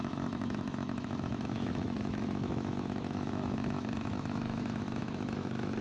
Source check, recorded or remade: remade